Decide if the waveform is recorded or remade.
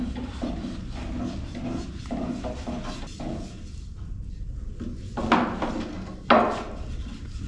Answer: recorded